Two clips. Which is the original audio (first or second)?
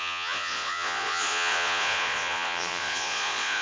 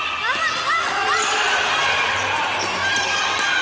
second